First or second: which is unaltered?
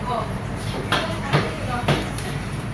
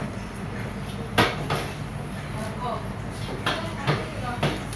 second